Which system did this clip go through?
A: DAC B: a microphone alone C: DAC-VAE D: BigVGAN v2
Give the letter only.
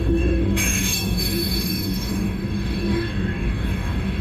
A